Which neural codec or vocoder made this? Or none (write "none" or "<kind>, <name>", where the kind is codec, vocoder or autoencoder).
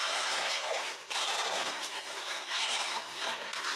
codec, SNAC